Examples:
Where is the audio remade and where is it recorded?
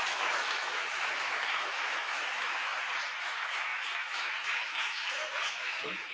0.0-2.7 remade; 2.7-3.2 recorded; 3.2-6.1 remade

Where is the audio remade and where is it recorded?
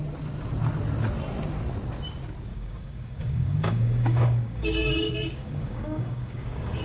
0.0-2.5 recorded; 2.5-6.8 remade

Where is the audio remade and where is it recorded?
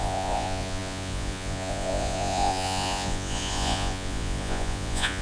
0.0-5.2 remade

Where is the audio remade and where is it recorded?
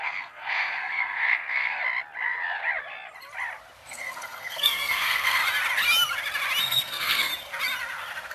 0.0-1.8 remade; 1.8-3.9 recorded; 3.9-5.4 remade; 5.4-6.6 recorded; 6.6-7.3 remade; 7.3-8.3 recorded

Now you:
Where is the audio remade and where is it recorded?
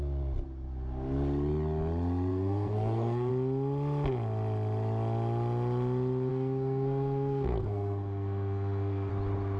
0.0-2.3 recorded; 2.3-3.3 remade; 3.3-6.3 recorded; 6.3-9.1 remade; 9.1-9.6 recorded